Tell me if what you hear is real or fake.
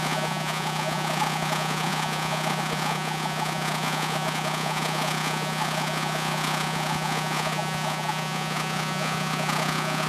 fake